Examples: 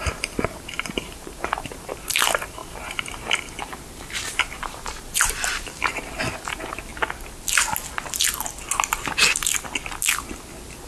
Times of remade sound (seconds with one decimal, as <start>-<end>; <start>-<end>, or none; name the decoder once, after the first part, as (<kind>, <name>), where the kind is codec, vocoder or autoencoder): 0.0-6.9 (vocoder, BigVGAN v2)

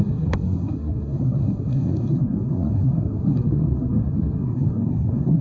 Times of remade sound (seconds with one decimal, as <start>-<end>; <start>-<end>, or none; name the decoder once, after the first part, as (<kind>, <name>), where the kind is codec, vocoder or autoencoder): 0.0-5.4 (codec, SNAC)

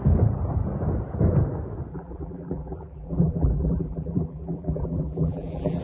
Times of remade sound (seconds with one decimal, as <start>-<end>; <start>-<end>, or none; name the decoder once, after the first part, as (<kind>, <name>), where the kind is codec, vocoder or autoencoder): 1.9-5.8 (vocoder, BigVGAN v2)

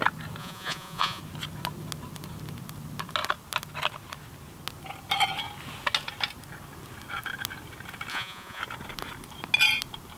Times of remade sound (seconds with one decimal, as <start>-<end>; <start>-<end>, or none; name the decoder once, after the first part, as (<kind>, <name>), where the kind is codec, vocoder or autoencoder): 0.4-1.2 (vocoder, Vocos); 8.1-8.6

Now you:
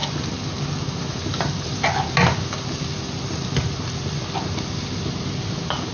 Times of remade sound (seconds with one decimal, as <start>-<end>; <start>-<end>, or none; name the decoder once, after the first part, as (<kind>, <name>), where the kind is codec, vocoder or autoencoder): none

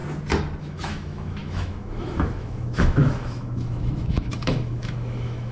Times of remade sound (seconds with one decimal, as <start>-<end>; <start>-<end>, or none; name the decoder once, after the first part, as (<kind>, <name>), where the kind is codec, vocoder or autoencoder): 0.6-5.5 (autoencoder, DAC-VAE)

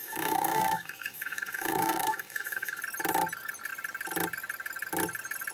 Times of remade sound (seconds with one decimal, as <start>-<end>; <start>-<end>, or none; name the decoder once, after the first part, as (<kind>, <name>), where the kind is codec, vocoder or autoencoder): 0.0-2.8 (codec, DAC)

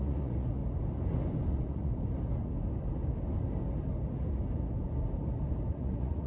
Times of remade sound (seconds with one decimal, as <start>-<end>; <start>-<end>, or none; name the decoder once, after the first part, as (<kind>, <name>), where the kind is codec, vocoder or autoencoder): 0.0-0.6 (vocoder, Vocos); 1.5-1.9; 5.7-6.3